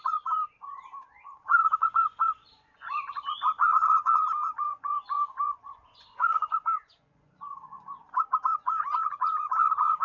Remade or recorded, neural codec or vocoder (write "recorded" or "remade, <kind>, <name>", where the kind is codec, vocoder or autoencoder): remade, vocoder, Vocos